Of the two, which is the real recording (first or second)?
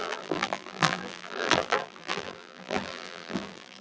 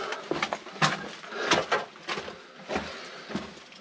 second